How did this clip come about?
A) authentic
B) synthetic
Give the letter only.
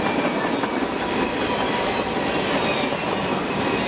A